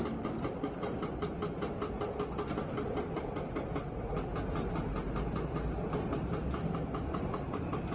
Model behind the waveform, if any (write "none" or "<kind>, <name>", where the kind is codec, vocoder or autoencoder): none